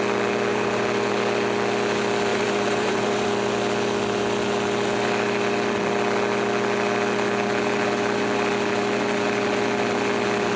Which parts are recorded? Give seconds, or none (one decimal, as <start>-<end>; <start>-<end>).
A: 0.0-0.5; 1.1-2.3; 3.3-10.6